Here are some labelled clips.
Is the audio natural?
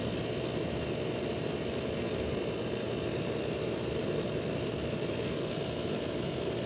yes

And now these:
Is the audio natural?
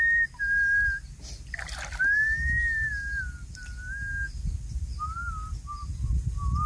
yes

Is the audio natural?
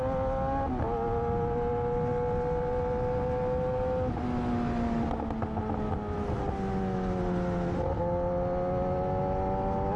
yes